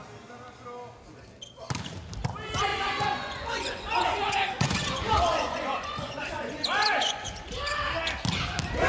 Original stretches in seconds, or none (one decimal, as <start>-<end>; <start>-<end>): 0.0-2.7; 7.5-8.9